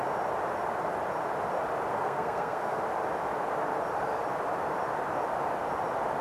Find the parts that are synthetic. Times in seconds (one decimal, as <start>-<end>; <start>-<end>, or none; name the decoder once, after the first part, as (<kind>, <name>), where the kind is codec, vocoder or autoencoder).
1.9-2.8 (codec, SNAC)